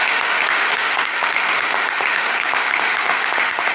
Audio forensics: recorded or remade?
remade